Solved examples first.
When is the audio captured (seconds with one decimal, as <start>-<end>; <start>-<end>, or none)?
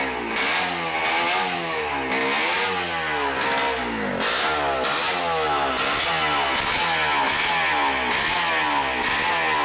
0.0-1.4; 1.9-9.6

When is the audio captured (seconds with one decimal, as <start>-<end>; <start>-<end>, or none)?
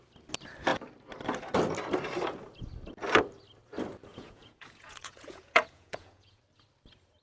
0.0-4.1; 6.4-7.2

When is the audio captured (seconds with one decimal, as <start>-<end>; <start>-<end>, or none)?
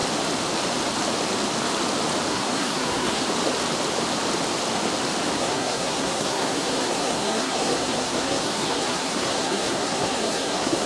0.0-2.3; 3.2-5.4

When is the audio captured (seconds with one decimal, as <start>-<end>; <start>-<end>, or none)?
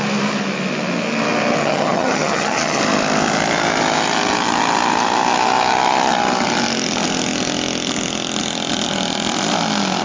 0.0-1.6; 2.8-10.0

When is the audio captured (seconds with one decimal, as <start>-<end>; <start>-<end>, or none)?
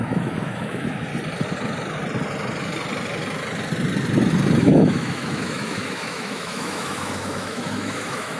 1.1-4.6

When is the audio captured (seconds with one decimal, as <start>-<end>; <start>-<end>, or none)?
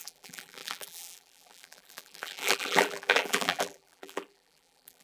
none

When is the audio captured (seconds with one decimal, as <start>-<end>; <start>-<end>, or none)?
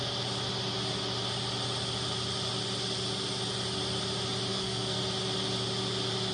0.0-4.5; 5.0-6.3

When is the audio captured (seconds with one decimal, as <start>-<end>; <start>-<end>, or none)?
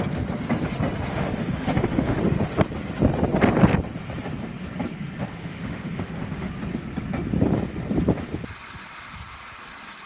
0.0-1.1; 2.2-5.4; 6.5-10.1